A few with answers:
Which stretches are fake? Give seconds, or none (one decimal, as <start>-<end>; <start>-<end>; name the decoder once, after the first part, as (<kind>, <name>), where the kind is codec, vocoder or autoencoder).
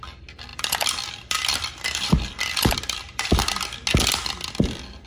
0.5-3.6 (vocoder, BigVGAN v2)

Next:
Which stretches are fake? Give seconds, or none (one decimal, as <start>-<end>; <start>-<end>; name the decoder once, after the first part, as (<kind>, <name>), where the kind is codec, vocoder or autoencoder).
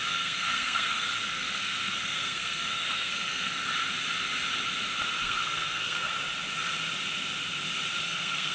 0.0-3.7 (codec, SNAC); 5.2-6.1; 8.0-8.5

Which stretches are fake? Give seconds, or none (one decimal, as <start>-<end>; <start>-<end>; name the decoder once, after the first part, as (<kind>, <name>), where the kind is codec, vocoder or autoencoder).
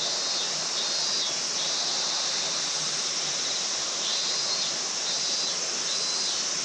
none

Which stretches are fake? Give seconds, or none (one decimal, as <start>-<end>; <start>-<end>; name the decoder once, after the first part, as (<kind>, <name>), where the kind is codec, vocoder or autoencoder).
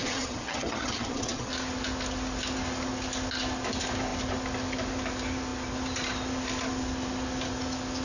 0.0-1.5 (vocoder, HiFi-GAN)